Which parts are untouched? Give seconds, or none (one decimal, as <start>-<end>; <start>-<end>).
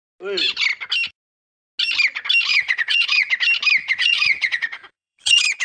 0.0-2.5; 3.3-3.8